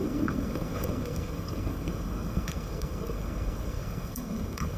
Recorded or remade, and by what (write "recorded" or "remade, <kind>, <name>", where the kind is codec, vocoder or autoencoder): remade, codec, SNAC